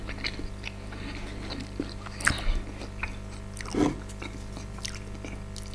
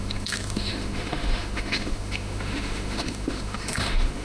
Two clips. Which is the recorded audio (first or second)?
first